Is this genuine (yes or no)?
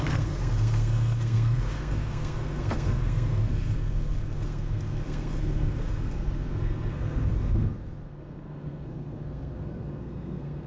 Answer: no